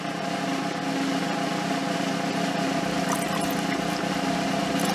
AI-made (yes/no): no